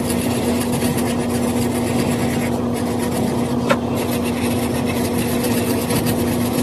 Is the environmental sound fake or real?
real